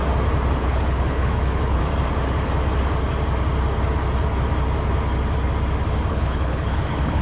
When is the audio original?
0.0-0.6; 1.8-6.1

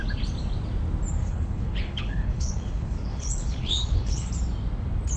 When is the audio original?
0.0-1.2; 4.3-5.2

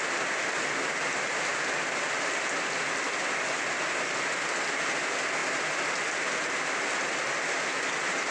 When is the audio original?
0.0-8.3

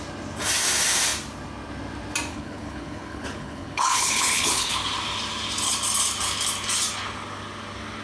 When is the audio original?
0.0-2.3; 4.7-8.0

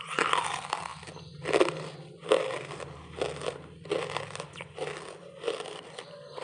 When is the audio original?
0.0-6.4

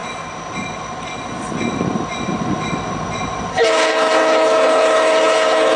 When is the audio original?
0.0-3.5

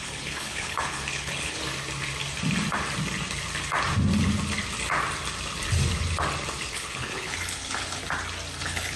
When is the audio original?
1.6-6.7; 8.0-8.6